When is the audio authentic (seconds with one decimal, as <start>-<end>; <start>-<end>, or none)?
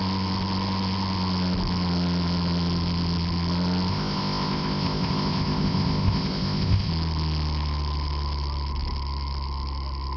0.0-3.9; 6.9-10.2